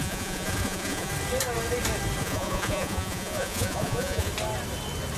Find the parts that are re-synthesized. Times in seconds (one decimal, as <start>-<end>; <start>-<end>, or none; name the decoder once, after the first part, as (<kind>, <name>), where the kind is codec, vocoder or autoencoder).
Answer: 0.0-1.1 (vocoder, Vocos); 2.2-4.3